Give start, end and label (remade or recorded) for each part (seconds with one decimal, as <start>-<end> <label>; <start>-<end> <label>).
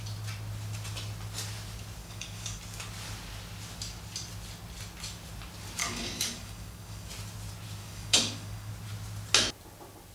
0.0-2.0 recorded; 2.0-2.6 remade; 2.6-5.8 recorded; 5.8-7.1 remade; 7.1-7.8 recorded; 7.8-8.7 remade; 8.7-10.1 recorded